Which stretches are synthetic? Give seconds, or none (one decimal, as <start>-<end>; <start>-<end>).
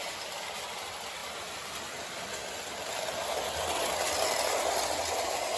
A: none